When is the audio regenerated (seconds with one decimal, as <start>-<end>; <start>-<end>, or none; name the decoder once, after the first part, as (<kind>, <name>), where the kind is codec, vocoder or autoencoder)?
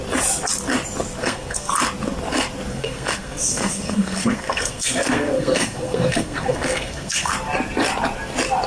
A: 1.2-1.7 (codec, SNAC); 2.7-7.3